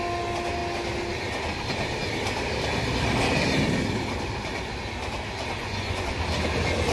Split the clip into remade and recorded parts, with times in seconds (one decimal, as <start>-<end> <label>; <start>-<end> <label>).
0.0-5.6 recorded; 5.6-6.1 remade; 6.1-6.9 recorded